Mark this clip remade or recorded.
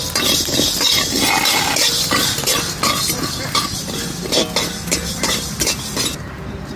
recorded